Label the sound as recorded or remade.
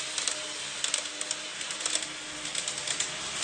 recorded